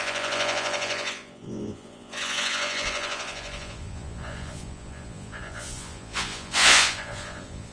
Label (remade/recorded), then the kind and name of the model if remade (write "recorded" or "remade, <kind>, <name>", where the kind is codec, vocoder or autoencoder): remade, vocoder, Vocos